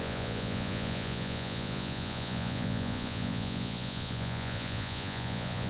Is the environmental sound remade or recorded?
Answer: remade